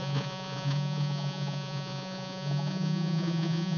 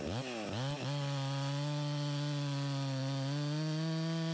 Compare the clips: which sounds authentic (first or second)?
second